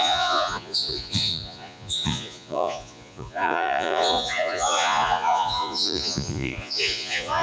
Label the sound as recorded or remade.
remade